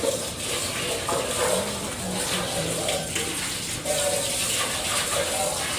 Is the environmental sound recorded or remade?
recorded